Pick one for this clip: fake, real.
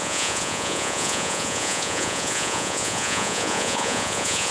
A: fake